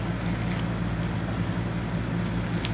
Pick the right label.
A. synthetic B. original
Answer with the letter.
B